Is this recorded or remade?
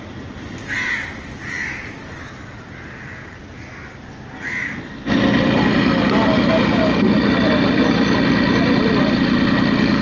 recorded